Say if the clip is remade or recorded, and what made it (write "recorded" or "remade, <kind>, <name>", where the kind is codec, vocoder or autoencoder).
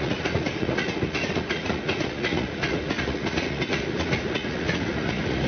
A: remade, vocoder, Vocos